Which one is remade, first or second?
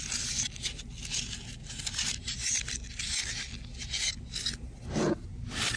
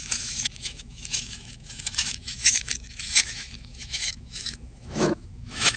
second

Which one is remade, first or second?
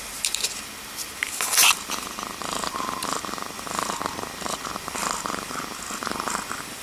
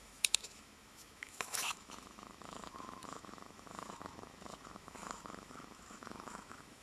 second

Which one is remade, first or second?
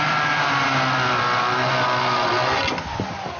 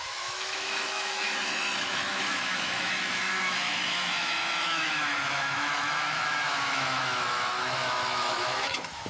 second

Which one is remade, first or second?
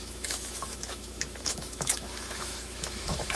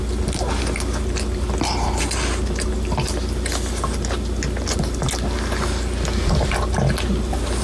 first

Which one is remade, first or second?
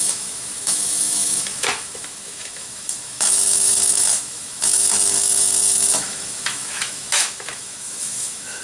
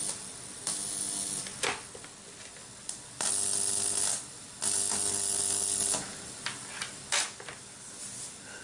first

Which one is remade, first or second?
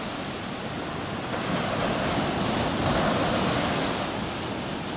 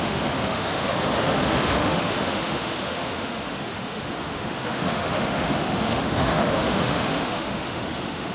second